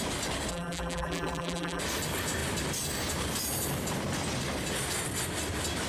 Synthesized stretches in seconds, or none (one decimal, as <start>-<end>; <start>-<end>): 0.5-1.8